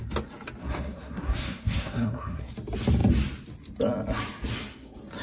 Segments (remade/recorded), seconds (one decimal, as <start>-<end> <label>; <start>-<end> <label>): 0.0-0.6 recorded; 0.6-2.5 remade; 2.5-5.2 recorded